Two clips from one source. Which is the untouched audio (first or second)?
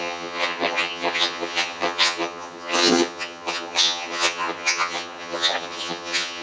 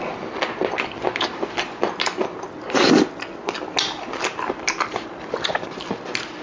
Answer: second